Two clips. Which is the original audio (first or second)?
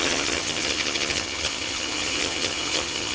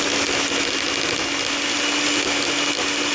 second